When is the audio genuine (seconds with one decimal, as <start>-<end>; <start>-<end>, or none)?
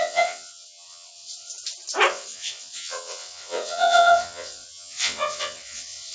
1.5-2.1